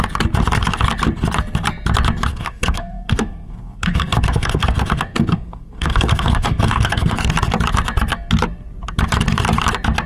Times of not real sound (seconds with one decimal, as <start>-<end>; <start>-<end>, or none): 2.3-7.2